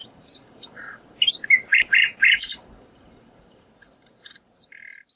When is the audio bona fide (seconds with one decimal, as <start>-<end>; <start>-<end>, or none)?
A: 0.7-1.7; 3.7-5.2